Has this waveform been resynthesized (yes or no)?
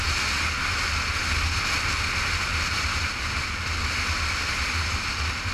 no